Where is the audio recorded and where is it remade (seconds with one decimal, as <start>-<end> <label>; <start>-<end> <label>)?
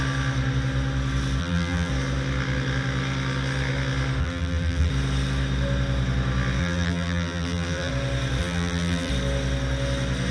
0.0-1.4 recorded; 1.4-1.9 remade; 1.9-4.2 recorded; 4.2-4.9 remade; 4.9-6.6 recorded; 6.6-7.9 remade; 7.9-8.4 recorded; 8.4-9.1 remade; 9.1-10.3 recorded